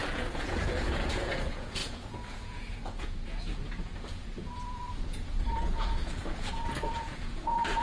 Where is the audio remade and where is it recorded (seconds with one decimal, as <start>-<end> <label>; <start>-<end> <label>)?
0.0-7.8 remade